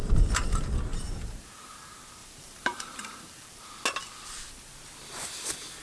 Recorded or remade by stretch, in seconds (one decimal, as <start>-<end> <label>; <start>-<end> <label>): 0.0-0.9 recorded; 0.9-1.4 remade; 1.4-2.2 recorded; 2.2-3.6 remade; 3.6-5.8 recorded